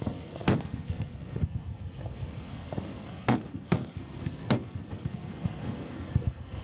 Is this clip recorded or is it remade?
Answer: remade